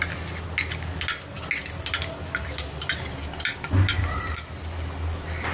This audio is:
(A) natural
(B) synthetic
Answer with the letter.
A